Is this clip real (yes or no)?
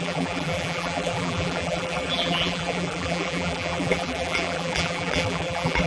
no